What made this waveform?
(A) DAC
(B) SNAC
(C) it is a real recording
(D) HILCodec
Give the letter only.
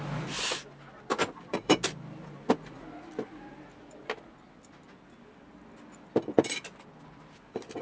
C